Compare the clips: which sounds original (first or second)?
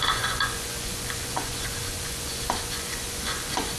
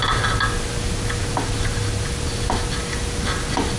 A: second